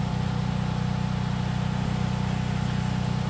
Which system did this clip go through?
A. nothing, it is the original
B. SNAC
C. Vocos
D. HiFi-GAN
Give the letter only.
A